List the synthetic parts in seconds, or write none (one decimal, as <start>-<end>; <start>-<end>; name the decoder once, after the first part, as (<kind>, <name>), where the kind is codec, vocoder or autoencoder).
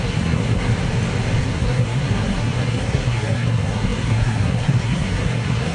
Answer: 0.0-0.7 (codec, SNAC); 1.4-5.7